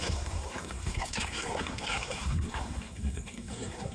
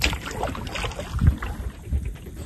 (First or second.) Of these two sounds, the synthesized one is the first